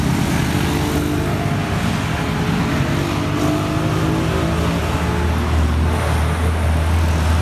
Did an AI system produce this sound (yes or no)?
no